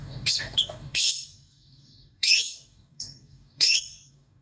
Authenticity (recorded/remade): remade